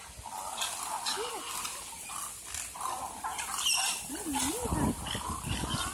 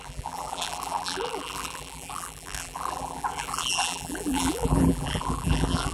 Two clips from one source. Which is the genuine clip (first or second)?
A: first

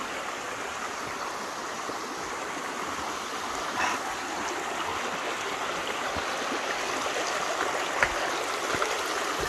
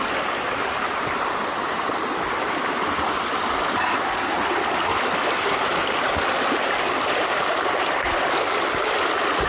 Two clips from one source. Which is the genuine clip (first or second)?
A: first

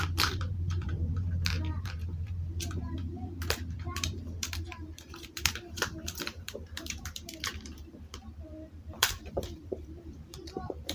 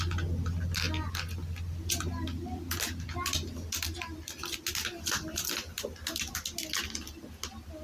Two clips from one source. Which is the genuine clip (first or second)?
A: second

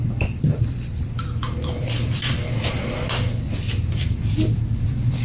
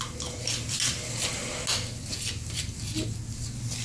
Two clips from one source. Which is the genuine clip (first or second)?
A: second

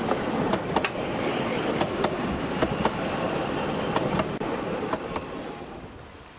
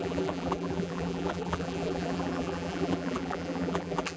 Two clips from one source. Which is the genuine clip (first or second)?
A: first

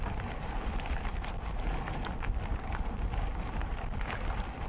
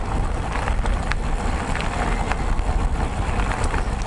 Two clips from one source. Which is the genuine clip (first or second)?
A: second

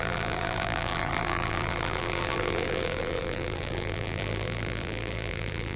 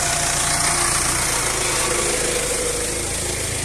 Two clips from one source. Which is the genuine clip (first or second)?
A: second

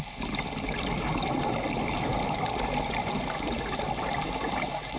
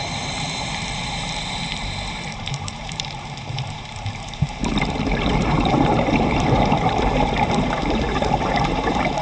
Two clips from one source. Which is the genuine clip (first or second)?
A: first